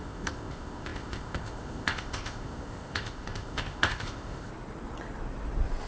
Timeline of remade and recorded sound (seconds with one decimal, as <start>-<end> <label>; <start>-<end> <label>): 0.0-4.5 remade; 4.5-5.9 recorded